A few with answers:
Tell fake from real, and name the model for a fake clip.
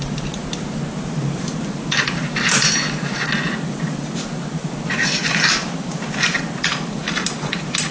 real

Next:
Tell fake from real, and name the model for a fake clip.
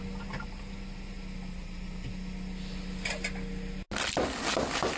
real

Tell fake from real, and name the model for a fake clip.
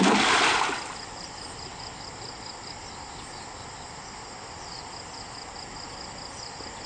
real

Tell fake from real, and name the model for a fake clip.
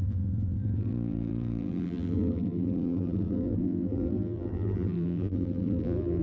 fake, vocoder, BigVGAN v2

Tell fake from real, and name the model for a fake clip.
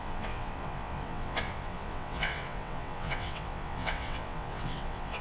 fake, vocoder, WaveNeXt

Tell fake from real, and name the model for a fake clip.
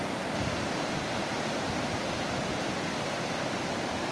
real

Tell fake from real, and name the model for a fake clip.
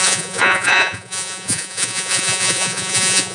fake, vocoder, Vocos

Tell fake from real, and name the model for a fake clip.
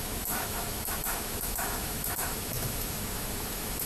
fake, autoencoder, DAC-VAE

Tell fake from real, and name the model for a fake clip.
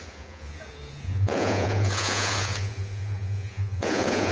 fake, vocoder, Vocos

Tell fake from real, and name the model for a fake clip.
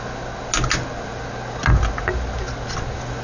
real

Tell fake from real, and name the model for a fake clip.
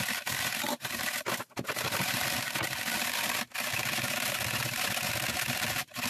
real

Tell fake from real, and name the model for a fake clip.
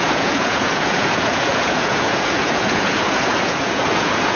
fake, vocoder, Vocos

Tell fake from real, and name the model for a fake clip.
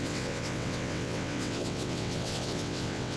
fake, vocoder, WaveNeXt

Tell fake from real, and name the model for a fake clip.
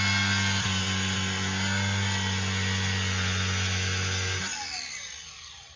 real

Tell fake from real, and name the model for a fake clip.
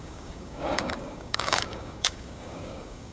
fake, codec, DAC